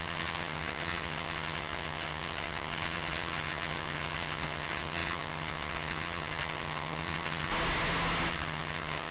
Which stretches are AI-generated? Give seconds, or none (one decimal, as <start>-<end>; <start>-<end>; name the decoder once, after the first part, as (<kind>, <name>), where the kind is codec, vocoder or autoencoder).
0.0-7.5 (vocoder, HiFi-GAN); 8.3-9.1